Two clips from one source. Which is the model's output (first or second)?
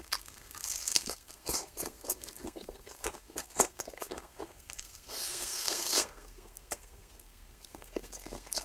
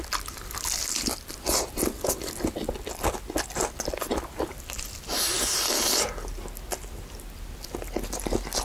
first